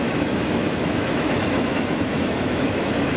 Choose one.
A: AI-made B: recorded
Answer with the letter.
A